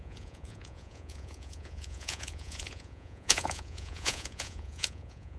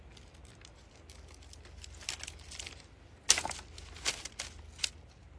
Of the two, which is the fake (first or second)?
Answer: first